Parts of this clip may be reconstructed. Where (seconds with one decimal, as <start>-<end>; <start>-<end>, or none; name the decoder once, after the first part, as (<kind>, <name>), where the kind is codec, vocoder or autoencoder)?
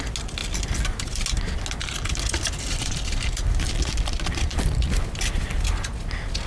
none